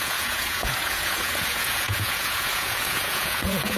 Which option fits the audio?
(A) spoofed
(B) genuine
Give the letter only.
A